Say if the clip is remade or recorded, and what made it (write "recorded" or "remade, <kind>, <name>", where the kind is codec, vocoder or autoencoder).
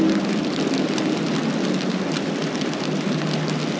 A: recorded